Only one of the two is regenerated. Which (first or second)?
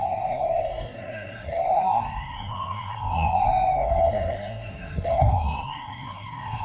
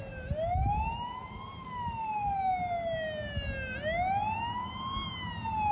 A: first